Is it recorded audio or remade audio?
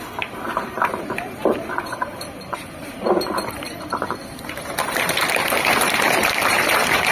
remade